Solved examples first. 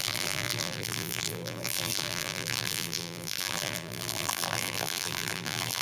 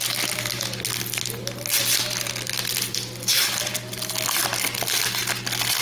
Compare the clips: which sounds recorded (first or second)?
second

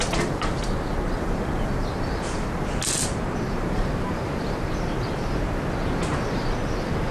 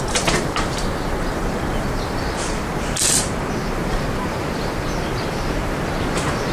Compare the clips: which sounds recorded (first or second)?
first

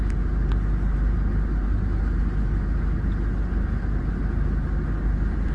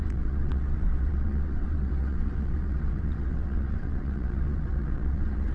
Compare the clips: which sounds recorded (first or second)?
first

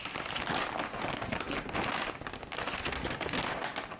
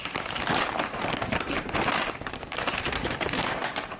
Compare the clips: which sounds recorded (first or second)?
first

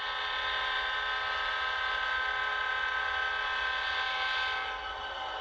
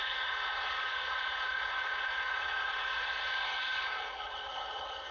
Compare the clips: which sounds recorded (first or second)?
first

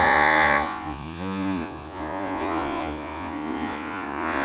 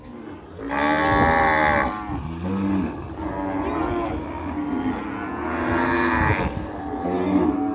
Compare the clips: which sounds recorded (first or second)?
second